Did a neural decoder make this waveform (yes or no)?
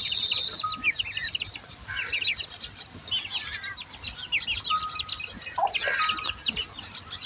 no